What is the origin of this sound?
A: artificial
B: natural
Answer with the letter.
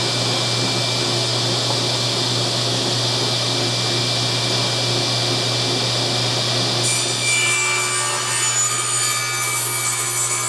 B